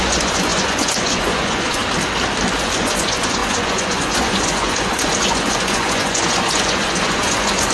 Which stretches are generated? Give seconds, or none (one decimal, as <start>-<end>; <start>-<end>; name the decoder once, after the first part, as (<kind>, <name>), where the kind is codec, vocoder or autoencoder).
0.0-1.8 (vocoder, Vocos); 2.6-7.7